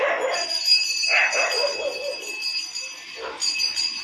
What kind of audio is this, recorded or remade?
recorded